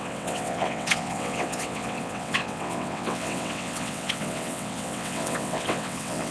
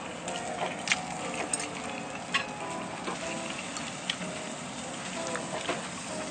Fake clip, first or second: first